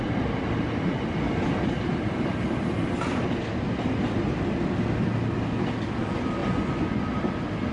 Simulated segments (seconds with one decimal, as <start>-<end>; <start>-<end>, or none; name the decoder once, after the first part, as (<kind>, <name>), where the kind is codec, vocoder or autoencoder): 6.4-7.0 (vocoder, Vocos)